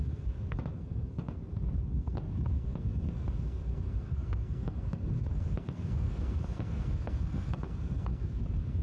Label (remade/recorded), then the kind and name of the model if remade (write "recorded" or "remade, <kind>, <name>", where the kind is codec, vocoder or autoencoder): remade, codec, SNAC